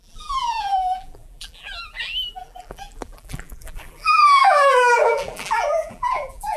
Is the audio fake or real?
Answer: fake